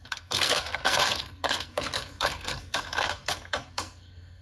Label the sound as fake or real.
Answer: fake